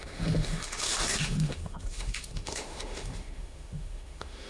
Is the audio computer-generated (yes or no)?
yes